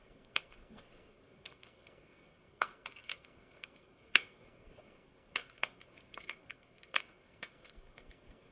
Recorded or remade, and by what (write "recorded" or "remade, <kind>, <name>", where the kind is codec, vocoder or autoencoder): remade, codec, SNAC